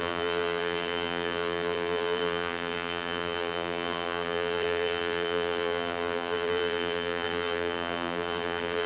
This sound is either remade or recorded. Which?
remade